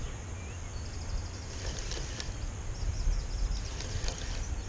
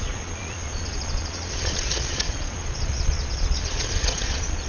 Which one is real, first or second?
first